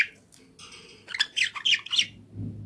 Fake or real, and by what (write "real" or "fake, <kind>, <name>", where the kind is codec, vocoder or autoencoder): real